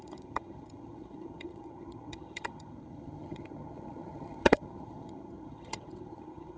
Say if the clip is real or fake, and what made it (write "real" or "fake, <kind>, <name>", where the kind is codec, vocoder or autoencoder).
fake, vocoder, HiFi-GAN